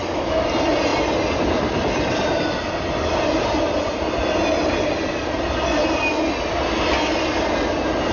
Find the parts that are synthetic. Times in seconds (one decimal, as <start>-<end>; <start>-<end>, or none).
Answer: none